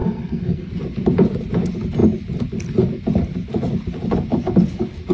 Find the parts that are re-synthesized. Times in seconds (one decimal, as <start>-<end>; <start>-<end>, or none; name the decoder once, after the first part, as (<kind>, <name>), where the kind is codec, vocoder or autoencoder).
0.0-0.7 (codec, SNAC)